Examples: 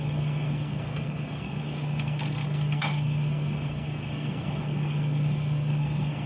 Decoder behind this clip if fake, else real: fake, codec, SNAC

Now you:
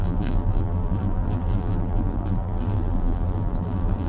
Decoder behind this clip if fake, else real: fake, vocoder, BigVGAN v2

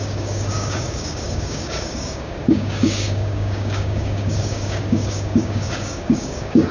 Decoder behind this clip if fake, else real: fake, codec, DAC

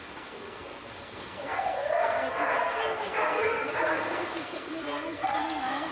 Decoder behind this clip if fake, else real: fake, codec, SNAC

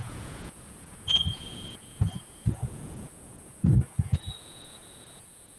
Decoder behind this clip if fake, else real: fake, vocoder, Vocos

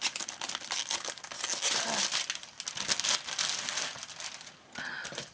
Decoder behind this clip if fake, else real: real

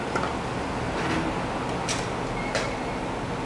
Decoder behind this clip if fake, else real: real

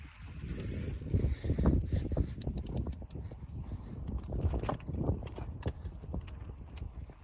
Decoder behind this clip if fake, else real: real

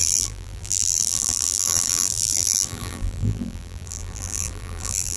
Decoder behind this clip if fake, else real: fake, vocoder, BigVGAN v2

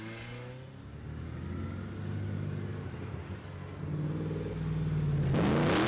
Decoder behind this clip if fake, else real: real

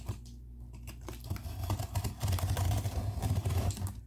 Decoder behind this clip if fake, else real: real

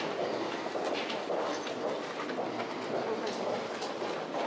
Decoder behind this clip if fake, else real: real